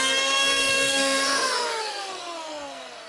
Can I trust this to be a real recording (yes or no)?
no